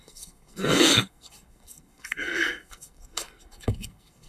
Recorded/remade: remade